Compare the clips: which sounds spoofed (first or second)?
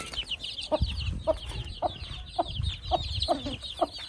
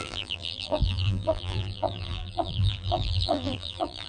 second